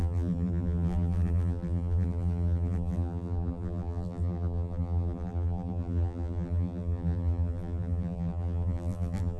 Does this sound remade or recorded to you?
remade